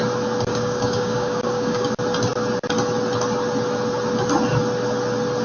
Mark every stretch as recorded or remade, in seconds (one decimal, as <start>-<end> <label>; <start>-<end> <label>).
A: 0.0-0.5 recorded; 0.5-1.9 remade; 1.9-5.4 recorded